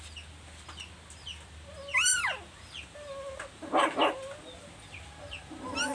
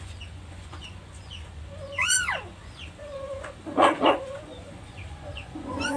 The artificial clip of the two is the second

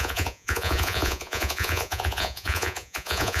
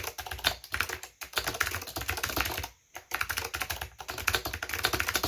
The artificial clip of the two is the first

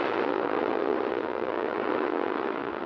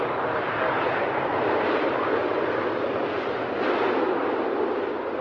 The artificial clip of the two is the first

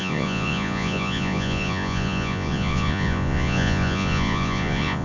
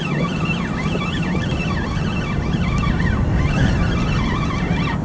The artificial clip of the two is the first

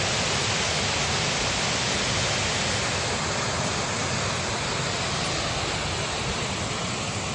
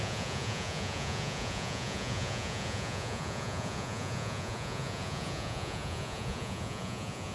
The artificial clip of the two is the second